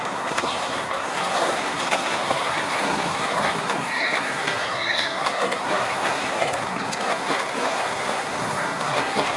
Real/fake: fake